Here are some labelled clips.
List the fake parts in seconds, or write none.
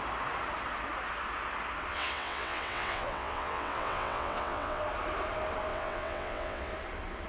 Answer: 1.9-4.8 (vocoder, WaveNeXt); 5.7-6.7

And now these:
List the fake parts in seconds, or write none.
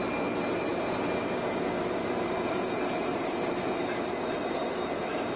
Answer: 0.7-3.9 (vocoder, BigVGAN v2); 4.4-5.4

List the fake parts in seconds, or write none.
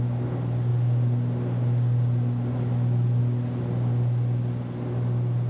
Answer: none